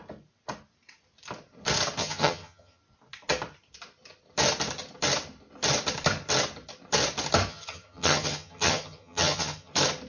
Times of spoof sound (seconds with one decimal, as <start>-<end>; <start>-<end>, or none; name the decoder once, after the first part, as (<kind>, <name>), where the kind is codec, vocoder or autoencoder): 2.0-2.8 (vocoder, HiFi-GAN); 7.5-9.7